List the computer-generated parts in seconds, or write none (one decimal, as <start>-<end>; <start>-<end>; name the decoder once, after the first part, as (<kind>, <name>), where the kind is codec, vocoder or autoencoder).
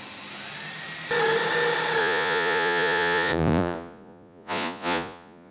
2.0-5.5 (vocoder, Vocos)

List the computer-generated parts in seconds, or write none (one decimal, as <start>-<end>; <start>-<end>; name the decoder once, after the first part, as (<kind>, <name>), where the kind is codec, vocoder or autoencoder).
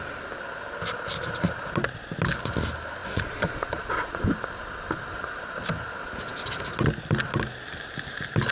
3.0-4.2 (vocoder, Vocos)